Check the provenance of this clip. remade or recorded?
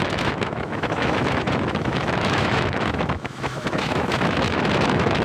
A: remade